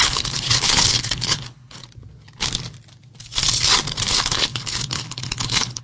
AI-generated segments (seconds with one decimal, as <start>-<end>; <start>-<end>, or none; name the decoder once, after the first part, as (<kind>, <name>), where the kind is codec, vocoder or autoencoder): 0.0-1.8 (codec, HILCodec); 4.1-5.8